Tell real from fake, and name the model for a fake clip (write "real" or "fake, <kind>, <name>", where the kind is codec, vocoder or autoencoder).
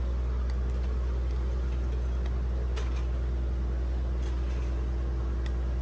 real